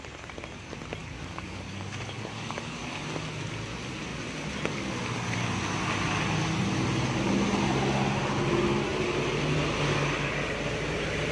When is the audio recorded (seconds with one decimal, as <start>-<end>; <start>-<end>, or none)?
0.0-1.0; 2.9-11.3